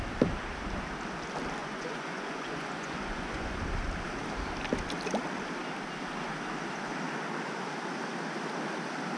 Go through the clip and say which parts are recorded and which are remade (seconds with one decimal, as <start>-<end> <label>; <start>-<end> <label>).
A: 0.0-1.6 recorded; 1.6-3.6 remade; 3.6-9.2 recorded